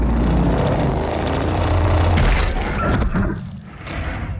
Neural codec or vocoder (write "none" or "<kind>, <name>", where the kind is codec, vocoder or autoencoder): none